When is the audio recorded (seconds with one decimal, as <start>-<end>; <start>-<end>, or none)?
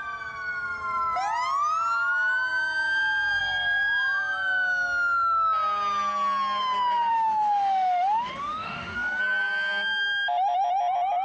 0.0-7.1; 9.2-11.2